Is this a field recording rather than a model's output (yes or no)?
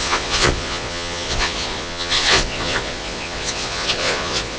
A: no